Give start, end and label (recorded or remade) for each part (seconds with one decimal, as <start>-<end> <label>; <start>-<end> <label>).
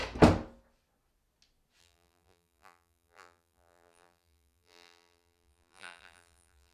0.0-1.8 recorded; 1.8-6.7 remade